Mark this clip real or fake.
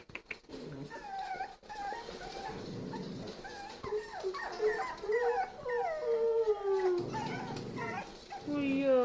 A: real